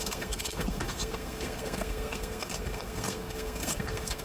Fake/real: fake